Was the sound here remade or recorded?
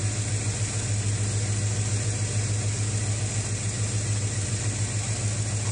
recorded